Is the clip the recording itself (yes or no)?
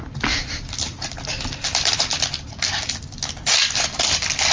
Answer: yes